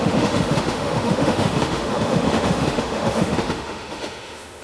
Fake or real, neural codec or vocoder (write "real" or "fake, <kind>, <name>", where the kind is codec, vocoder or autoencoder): fake, autoencoder, DAC-VAE